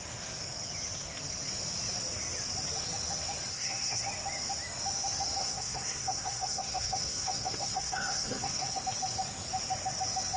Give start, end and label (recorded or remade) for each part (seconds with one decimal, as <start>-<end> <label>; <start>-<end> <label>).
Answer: 0.0-3.5 recorded; 3.5-4.0 remade; 4.0-5.4 recorded; 5.4-8.8 remade; 8.8-10.4 recorded